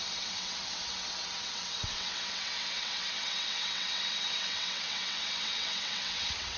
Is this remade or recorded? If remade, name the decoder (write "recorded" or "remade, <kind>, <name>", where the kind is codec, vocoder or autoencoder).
remade, vocoder, WaveNeXt